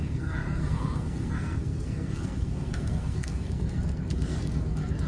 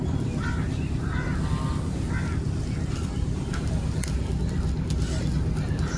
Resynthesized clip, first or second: first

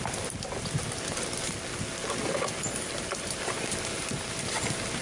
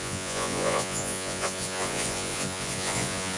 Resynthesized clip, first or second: second